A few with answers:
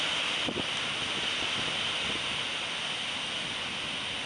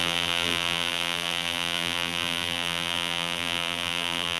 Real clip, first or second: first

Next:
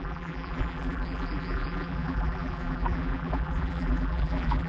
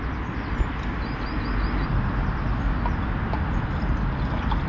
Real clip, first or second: second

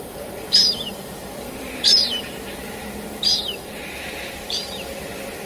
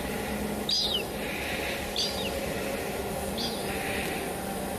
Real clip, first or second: second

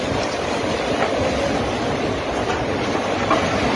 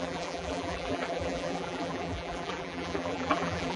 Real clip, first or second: first